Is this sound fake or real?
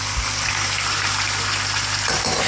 real